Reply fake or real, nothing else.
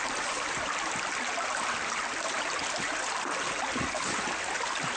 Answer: real